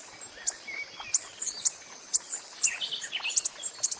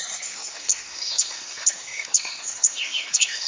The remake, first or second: second